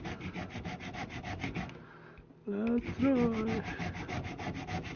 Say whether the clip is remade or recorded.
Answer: recorded